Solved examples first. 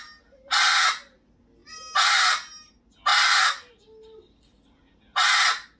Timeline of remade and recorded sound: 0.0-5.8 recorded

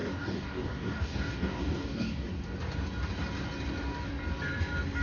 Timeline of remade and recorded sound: 0.0-2.3 remade; 2.3-5.0 recorded

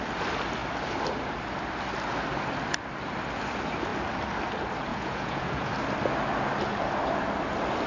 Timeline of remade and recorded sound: 0.0-4.9 recorded; 4.9-5.7 remade; 5.7-7.9 recorded

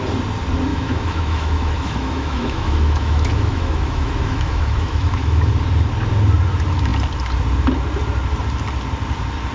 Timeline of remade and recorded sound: 0.0-0.7 recorded; 0.7-5.5 remade; 5.5-9.5 recorded

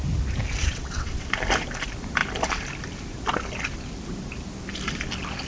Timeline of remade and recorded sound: 0.0-0.6 recorded; 0.6-1.3 remade; 1.3-5.5 recorded

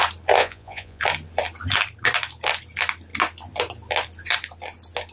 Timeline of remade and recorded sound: 0.0-0.4 recorded; 0.4-1.0 remade; 1.0-5.1 recorded

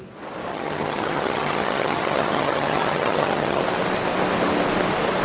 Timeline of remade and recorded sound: 0.0-0.5 recorded; 0.5-3.6 remade; 3.6-5.2 recorded